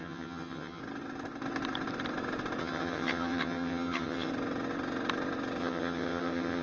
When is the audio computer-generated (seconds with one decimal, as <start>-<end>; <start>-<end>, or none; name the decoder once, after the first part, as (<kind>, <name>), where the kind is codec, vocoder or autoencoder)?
0.0-0.8 (vocoder, HiFi-GAN); 2.6-4.3; 5.6-6.6